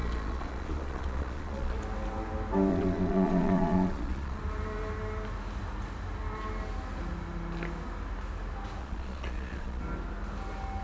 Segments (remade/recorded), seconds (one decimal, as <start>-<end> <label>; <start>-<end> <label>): 0.0-1.8 remade; 1.8-2.7 recorded; 2.7-4.4 remade; 4.4-8.8 recorded; 8.8-9.8 remade; 9.8-10.8 recorded